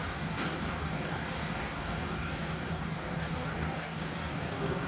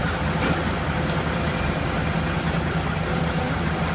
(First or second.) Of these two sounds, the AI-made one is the first